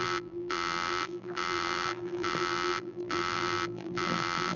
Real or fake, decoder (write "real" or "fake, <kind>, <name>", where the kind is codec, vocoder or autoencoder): fake, vocoder, BigVGAN v2